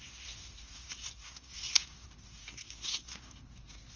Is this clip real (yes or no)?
no